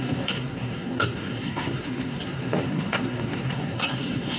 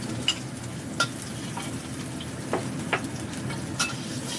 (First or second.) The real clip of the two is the second